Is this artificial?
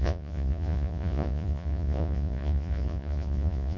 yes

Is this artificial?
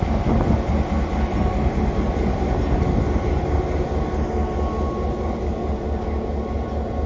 no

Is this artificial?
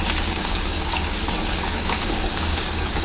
yes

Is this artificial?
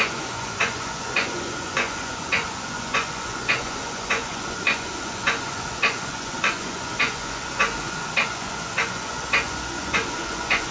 yes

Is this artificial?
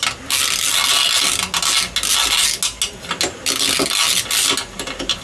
no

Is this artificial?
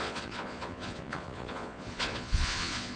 yes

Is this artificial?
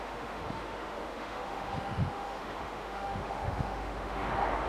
yes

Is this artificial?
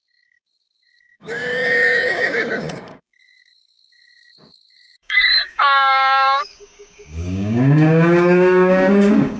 yes